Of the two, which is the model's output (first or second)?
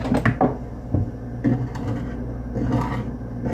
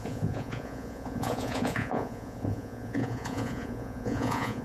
second